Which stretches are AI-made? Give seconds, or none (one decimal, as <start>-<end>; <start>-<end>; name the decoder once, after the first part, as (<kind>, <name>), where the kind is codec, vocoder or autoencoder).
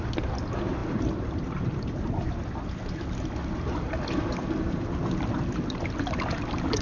none